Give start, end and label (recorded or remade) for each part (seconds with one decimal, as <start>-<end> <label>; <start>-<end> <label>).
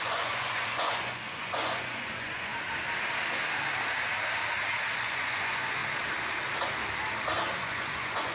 0.0-2.5 remade; 2.5-4.9 recorded; 4.9-5.8 remade; 5.8-7.6 recorded; 7.6-8.3 remade